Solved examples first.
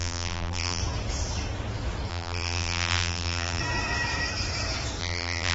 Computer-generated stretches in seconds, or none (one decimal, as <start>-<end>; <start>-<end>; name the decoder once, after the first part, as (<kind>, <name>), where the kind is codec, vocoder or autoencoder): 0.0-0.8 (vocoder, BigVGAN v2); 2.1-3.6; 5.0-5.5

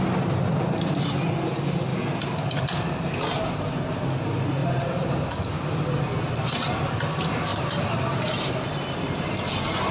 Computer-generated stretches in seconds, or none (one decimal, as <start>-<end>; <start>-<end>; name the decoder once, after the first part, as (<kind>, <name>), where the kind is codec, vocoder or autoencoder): 4.6-5.3 (vocoder, BigVGAN v2); 7.5-9.5

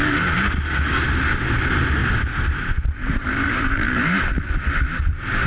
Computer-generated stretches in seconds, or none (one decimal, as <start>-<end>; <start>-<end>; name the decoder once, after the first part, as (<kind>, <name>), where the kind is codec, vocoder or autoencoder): 2.0-5.5 (vocoder, BigVGAN v2)

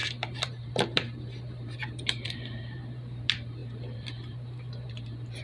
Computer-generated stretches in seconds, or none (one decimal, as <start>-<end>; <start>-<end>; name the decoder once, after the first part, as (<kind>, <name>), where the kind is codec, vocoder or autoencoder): 0.0-5.4 (vocoder, BigVGAN v2)